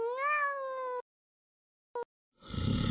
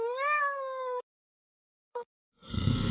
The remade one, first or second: second